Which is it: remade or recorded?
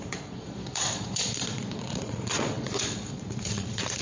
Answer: remade